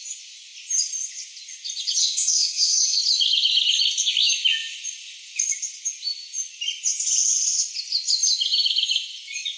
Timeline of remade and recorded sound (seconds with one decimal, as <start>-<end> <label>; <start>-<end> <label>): 0.0-2.0 recorded; 2.0-3.0 remade; 3.0-9.6 recorded